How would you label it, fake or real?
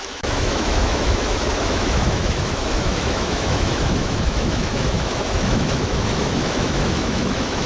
fake